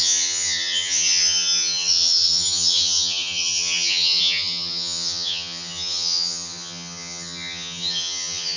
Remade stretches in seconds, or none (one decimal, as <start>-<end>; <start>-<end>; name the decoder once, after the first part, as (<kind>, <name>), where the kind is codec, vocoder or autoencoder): 0.0-8.6 (vocoder, HiFi-GAN)